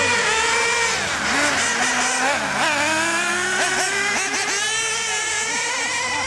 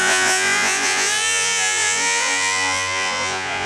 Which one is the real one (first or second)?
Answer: first